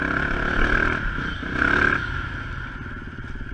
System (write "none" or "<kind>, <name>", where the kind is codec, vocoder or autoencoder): none